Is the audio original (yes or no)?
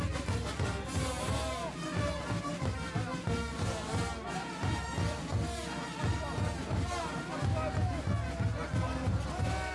yes